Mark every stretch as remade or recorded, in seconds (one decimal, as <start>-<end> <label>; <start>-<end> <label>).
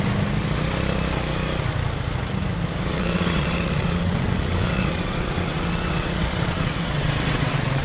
0.0-2.9 recorded; 2.9-7.8 remade